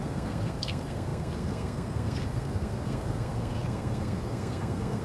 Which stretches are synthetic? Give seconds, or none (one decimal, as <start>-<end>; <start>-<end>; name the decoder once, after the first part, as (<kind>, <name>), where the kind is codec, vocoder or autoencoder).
0.0-5.0 (codec, SNAC)